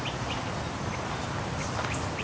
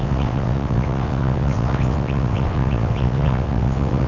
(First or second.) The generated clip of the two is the second